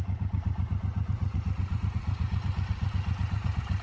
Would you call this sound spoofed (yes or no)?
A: yes